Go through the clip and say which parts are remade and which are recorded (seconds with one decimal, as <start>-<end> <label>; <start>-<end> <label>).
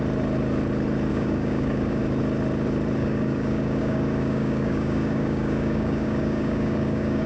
0.0-1.1 recorded; 1.1-2.0 remade; 2.0-3.0 recorded; 3.0-7.3 remade